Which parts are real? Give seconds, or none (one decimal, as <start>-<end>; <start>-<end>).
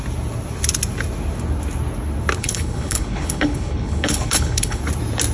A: 0.0-2.4; 4.8-5.3